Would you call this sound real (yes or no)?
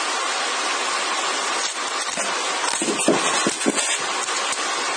yes